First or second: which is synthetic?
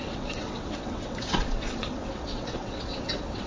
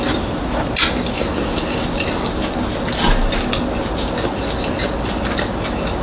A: first